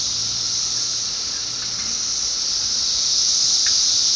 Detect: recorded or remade remade